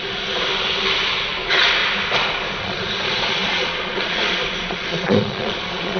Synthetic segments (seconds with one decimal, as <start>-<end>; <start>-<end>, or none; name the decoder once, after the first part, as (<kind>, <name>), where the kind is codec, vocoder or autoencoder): 0.0-0.5 (vocoder, Vocos); 1.4-1.8; 2.6-6.0